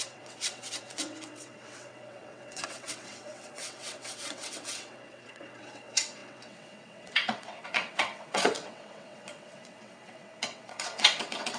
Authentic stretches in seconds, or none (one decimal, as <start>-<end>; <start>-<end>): none